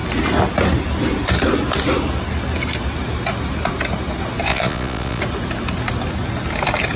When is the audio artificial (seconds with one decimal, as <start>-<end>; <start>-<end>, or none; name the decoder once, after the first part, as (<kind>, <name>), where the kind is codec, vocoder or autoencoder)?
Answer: 4.5-5.2 (vocoder, Vocos)